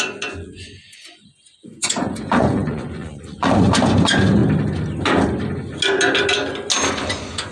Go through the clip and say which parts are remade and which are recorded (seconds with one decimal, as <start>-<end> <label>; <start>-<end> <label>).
0.0-4.4 remade; 4.4-6.9 recorded; 6.9-7.5 remade